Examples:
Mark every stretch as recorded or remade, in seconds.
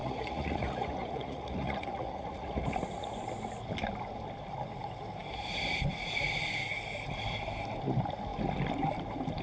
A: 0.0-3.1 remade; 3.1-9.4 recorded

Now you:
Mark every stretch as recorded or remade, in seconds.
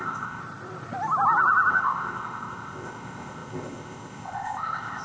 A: 0.0-0.4 remade; 0.4-1.7 recorded; 1.7-5.0 remade